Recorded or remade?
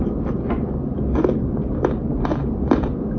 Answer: recorded